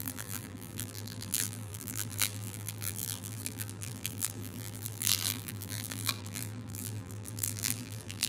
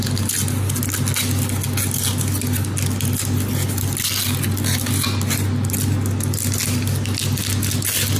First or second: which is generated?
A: first